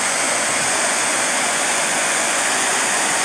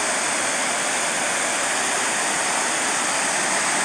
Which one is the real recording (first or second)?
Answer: second